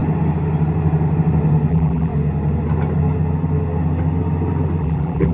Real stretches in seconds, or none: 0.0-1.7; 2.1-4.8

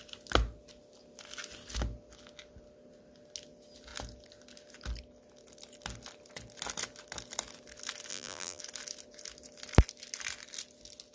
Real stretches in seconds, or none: 0.0-8.1; 8.6-11.1

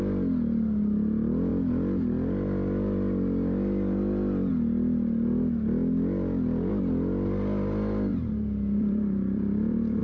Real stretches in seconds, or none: 0.0-1.5; 4.5-8.1

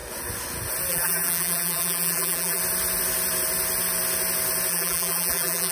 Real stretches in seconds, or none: 0.0-0.9; 2.6-4.7

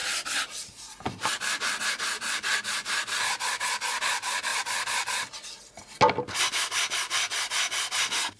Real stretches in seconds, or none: 0.0-8.4

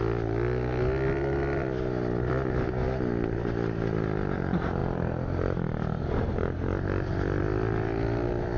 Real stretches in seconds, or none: 0.0-8.6